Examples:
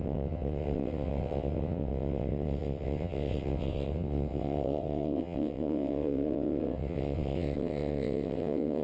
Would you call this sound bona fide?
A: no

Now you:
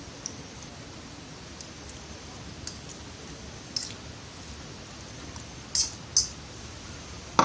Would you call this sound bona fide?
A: yes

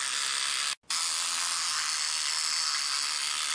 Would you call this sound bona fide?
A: yes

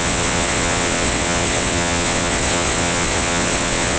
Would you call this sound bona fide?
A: no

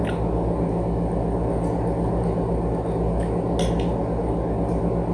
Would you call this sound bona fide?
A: yes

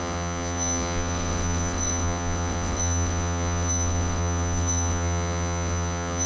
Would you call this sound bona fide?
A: no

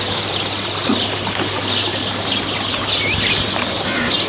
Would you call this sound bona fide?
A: yes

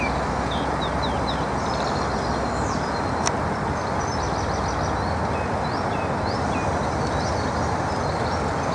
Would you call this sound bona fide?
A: yes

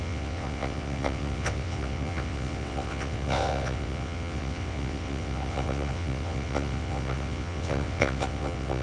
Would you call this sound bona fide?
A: no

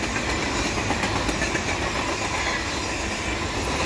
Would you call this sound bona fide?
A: yes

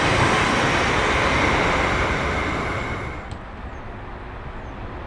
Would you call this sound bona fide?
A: yes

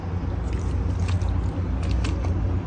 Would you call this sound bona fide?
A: yes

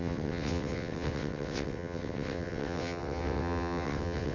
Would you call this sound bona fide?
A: no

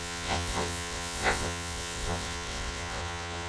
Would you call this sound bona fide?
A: no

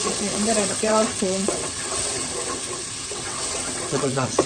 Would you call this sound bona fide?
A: no